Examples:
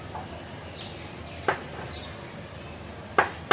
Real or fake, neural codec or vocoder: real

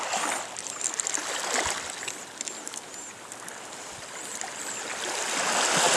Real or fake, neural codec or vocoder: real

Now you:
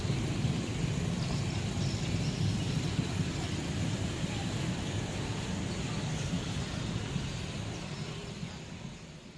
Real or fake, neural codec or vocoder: fake, vocoder, BigVGAN v2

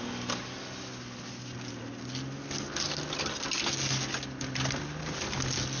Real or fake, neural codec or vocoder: real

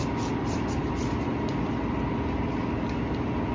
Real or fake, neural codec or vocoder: real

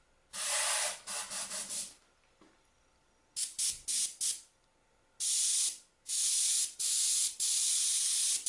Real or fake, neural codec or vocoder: real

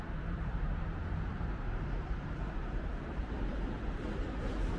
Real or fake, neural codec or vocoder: fake, vocoder, BigVGAN v2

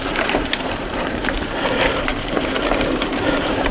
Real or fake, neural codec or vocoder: fake, vocoder, BigVGAN v2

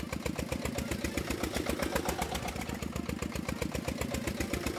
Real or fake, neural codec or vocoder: real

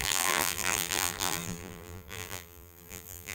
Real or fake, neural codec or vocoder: fake, vocoder, BigVGAN v2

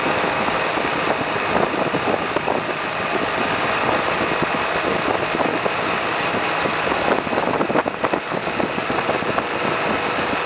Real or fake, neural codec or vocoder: real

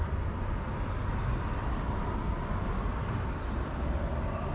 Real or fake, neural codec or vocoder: real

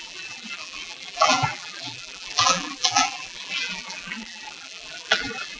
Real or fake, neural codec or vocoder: fake, vocoder, BigVGAN v2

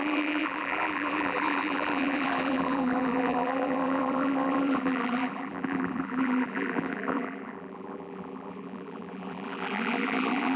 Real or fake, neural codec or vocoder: fake, vocoder, BigVGAN v2